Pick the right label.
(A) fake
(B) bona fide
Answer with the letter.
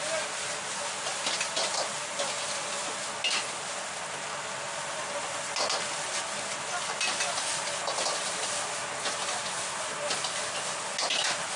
B